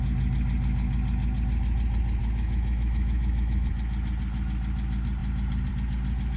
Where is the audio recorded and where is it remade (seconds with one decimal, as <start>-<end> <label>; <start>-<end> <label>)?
0.0-2.2 recorded; 2.2-3.7 remade; 3.7-6.4 recorded